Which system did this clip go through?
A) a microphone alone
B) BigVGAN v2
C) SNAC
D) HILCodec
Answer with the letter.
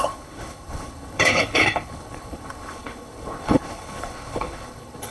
D